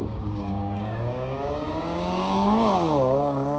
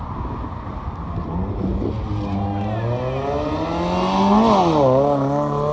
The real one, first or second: second